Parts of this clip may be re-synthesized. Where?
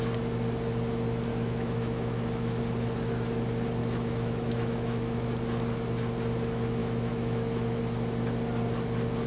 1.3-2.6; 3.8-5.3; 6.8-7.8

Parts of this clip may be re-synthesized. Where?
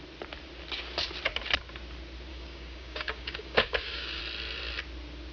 2.3-4.2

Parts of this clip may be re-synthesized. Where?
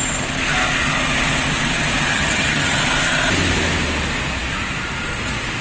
2.1-2.8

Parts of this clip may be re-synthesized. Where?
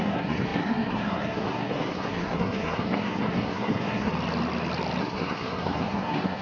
0.0-4.1; 5.0-6.4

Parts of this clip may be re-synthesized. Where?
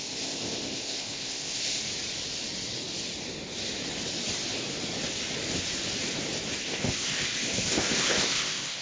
0.0-1.8; 6.6-8.8